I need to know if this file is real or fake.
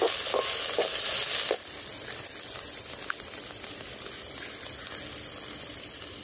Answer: real